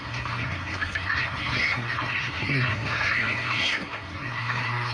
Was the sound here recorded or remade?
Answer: remade